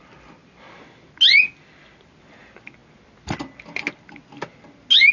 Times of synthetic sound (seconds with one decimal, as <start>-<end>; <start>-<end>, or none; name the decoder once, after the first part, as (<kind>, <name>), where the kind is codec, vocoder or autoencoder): none